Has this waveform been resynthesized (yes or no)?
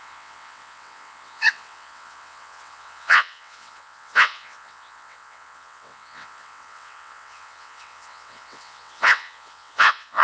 yes